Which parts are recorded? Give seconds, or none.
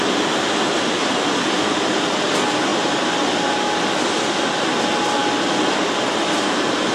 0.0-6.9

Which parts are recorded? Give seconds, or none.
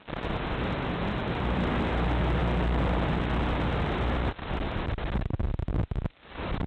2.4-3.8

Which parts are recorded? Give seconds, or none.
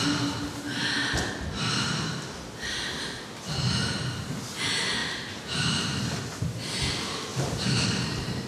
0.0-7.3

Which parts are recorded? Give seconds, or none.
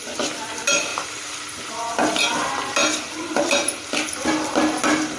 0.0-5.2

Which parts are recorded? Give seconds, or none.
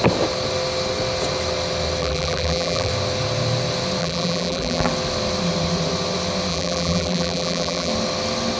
0.0-2.0; 2.9-4.0; 4.9-6.5; 7.9-8.6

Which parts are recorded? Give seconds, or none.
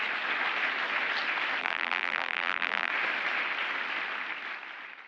0.0-1.6; 2.9-5.1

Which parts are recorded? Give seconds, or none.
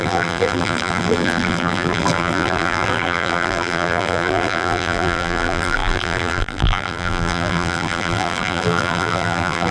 none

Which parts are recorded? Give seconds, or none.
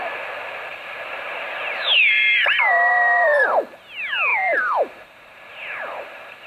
0.0-0.7; 3.6-4.3